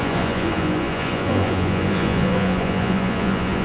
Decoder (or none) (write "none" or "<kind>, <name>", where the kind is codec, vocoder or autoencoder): vocoder, Vocos